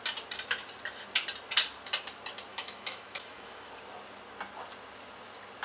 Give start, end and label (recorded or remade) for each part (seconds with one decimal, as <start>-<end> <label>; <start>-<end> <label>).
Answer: 0.0-2.5 recorded; 2.5-3.7 remade; 3.7-5.6 recorded